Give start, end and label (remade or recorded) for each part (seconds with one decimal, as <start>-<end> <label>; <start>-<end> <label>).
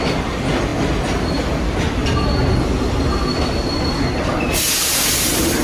0.0-5.6 recorded